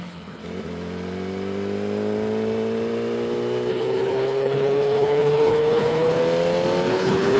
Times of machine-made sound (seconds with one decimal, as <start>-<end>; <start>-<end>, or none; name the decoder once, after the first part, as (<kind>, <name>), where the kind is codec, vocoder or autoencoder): 0.0-0.4 (codec, HILCodec); 3.7-6.2; 6.9-7.4